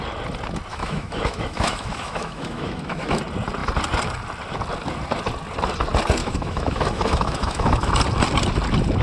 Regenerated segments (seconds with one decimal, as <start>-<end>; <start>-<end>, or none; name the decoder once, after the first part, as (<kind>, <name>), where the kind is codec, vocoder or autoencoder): 0.7-3.2 (autoencoder, DAC-VAE); 6.2-7.9